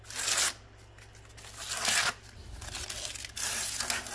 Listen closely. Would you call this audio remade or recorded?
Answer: recorded